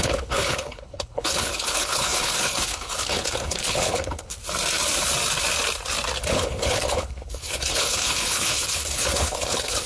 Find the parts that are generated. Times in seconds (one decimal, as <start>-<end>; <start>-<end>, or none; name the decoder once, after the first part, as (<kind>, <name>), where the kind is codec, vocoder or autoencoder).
0.0-4.4 (codec, HILCodec); 6.3-9.9